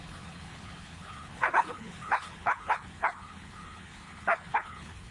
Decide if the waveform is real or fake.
fake